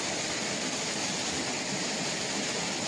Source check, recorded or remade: recorded